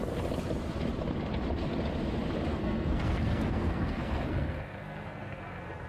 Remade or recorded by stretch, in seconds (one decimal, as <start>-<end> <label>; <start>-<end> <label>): 0.0-2.5 recorded; 2.5-5.9 remade